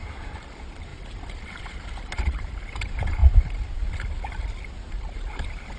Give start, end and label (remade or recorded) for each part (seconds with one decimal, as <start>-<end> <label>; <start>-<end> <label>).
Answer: 0.0-0.9 remade; 0.9-1.6 recorded; 1.6-3.2 remade; 3.2-4.9 recorded; 4.9-5.8 remade